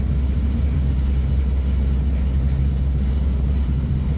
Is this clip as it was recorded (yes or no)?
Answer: yes